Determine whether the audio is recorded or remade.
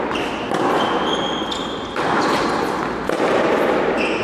recorded